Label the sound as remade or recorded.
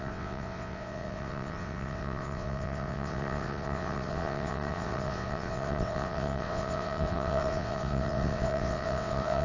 remade